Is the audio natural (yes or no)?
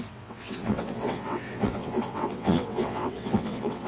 no